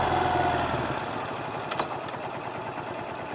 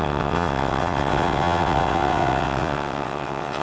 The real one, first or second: first